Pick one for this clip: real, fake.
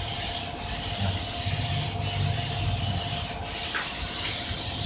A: real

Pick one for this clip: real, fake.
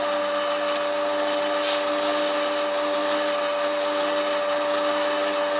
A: real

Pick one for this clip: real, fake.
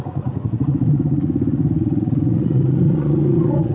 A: fake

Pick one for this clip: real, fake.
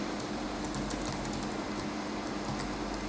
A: real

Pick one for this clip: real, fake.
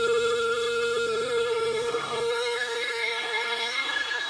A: fake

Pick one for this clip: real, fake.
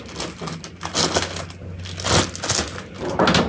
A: real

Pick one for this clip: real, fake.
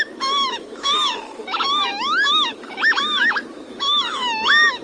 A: fake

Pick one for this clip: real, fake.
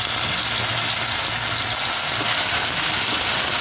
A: real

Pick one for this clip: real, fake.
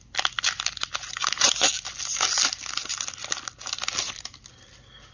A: real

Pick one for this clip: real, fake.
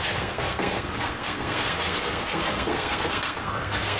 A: fake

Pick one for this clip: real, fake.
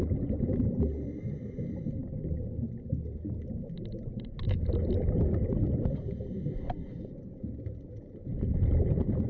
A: real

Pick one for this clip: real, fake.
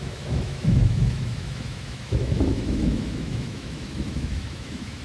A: fake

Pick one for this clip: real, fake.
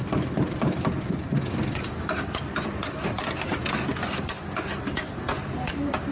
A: real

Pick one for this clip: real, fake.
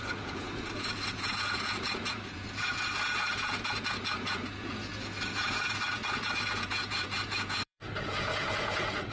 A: fake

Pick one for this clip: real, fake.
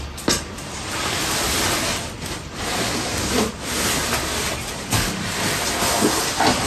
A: real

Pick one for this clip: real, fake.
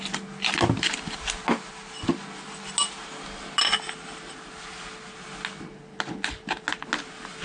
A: real